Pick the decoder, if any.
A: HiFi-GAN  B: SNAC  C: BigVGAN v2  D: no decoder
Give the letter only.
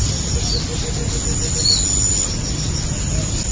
D